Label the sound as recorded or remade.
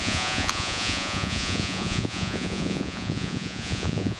remade